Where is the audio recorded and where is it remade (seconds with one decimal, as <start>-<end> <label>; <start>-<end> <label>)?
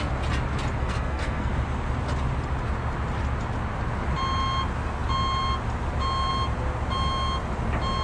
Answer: 0.0-0.8 recorded; 0.8-1.5 remade; 1.5-8.0 recorded